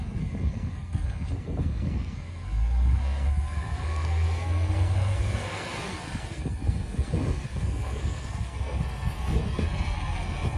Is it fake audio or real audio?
fake